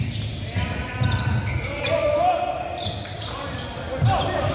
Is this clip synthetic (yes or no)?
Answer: no